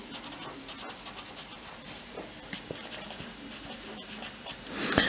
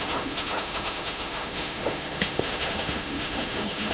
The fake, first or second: second